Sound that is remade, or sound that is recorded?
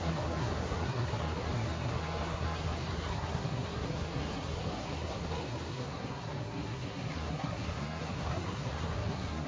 remade